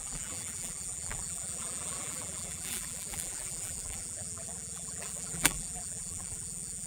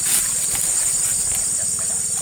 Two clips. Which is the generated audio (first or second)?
first